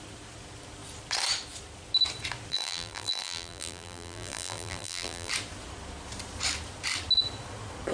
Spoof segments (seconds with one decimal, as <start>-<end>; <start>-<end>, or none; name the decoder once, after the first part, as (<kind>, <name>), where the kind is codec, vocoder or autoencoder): 2.5-5.3 (vocoder, BigVGAN v2)